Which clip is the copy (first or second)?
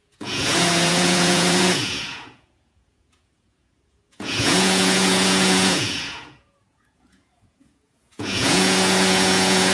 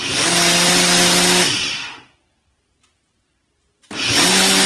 first